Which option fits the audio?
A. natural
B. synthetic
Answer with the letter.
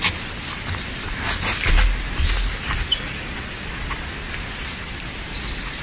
A